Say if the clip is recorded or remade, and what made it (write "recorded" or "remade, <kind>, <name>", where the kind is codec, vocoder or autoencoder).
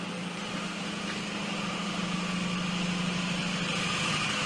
recorded